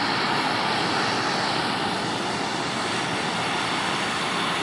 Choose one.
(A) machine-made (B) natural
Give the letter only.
B